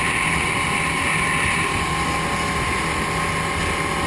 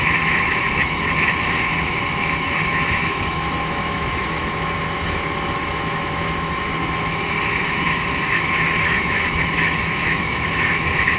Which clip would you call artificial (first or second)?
second